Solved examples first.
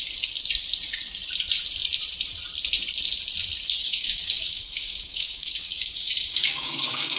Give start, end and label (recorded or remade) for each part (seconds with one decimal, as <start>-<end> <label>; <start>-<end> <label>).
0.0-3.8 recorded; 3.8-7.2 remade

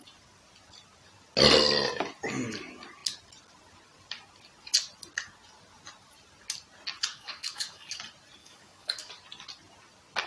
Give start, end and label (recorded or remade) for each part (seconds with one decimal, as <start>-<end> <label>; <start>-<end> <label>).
0.0-7.1 recorded; 7.1-8.0 remade; 8.0-8.4 recorded; 8.4-9.1 remade; 9.1-10.3 recorded

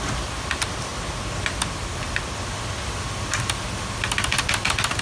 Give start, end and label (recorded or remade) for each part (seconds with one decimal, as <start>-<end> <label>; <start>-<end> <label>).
0.0-5.0 recorded

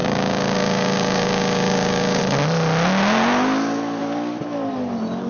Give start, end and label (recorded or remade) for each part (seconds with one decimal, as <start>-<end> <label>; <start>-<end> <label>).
0.0-2.2 remade; 2.2-5.3 recorded

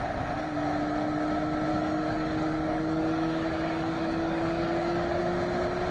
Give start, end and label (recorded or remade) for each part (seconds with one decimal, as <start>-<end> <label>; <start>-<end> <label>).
0.0-1.7 recorded; 1.7-5.2 remade; 5.2-5.9 recorded